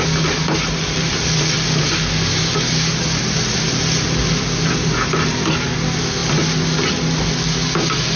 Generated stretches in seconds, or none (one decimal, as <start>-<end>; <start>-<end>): none